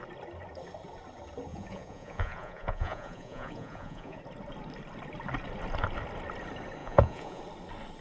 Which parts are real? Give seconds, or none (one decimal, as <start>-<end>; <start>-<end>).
0.0-1.5; 4.2-6.8; 7.4-8.0